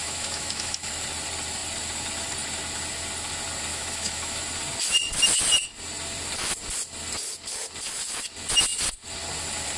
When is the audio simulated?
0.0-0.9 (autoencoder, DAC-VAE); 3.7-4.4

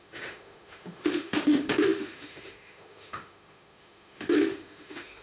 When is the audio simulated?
0.0-5.2 (autoencoder, DAC-VAE)

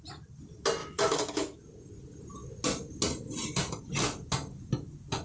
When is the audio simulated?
0.8-1.6 (autoencoder, DAC-VAE)

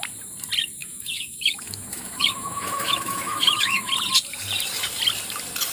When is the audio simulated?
0.8-3.9 (autoencoder, DAC-VAE)

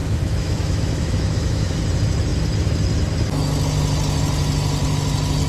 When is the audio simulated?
0.0-1.8 (autoencoder, DAC-VAE)

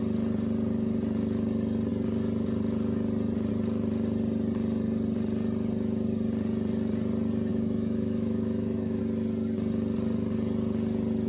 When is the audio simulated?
7.5-9.0 (autoencoder, DAC-VAE)

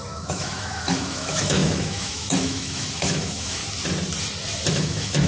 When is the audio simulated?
0.0-3.6 (autoencoder, DAC-VAE); 4.7-5.3